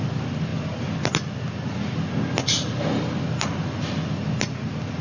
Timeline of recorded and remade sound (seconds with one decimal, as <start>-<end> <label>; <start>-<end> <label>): 0.0-5.0 recorded